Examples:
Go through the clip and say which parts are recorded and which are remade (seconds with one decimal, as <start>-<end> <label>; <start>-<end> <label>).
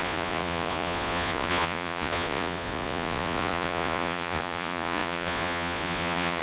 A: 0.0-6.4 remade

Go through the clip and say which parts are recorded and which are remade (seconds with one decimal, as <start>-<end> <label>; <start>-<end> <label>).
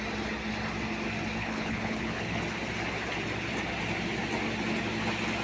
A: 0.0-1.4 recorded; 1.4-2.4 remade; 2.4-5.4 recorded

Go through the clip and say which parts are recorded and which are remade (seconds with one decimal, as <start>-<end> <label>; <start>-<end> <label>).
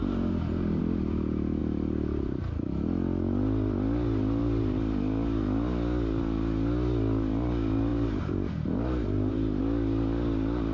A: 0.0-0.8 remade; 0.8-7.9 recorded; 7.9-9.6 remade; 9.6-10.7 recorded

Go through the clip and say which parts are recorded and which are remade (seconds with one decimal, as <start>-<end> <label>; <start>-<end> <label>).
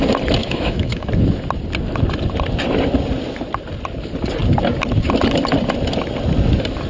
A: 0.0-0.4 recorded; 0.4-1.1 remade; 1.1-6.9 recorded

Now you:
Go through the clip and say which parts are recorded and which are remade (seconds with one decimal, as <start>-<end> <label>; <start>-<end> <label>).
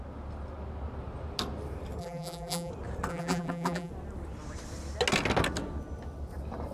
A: 0.0-2.0 recorded; 2.0-2.7 remade; 2.7-3.1 recorded; 3.1-3.9 remade; 3.9-6.7 recorded